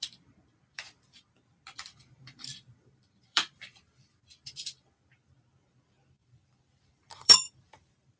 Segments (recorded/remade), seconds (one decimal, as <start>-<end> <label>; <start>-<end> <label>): 0.0-8.2 remade